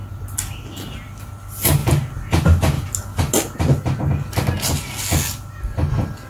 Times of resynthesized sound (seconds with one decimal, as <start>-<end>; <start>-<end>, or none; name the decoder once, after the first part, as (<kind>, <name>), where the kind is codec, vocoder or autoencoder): none